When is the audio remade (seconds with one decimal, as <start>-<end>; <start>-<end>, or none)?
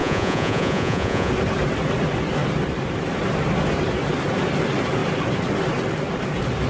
0.0-1.3